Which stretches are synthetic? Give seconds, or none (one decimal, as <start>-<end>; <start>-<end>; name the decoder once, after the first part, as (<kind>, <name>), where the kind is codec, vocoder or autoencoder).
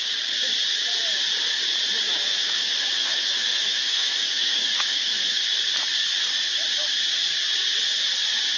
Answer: 2.3-5.6 (autoencoder, DAC-VAE)